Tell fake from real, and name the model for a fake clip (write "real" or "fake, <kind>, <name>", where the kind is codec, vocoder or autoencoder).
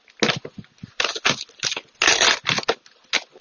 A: real